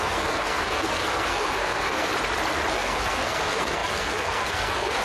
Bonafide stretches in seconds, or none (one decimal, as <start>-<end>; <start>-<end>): 2.1-2.7